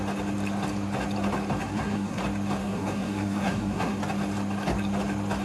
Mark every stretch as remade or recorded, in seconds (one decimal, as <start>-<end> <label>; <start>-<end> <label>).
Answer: 0.0-1.6 recorded; 1.6-2.2 remade; 2.2-2.6 recorded; 2.6-4.0 remade; 4.0-5.4 recorded